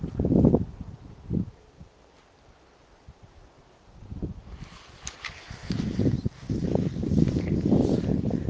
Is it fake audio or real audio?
real